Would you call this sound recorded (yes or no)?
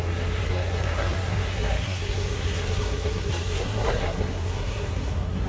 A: no